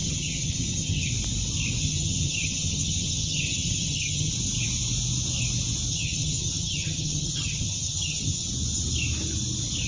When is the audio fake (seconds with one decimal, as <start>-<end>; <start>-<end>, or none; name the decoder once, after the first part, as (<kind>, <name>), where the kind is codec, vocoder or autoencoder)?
0.0-1.1 (vocoder, HiFi-GAN); 1.8-4.3; 5.9-8.5